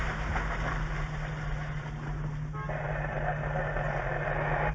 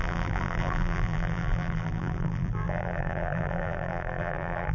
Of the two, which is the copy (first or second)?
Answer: second